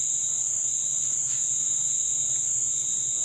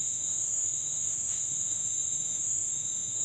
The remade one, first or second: second